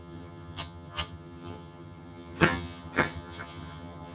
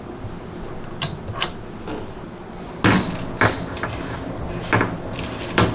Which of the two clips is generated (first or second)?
first